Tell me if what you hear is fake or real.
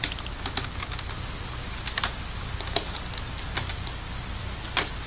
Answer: real